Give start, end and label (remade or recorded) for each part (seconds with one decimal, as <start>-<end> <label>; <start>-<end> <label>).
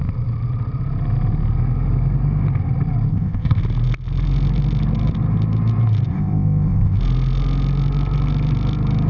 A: 0.0-3.1 recorded; 3.1-3.6 remade; 3.6-6.1 recorded; 6.1-7.0 remade; 7.0-9.1 recorded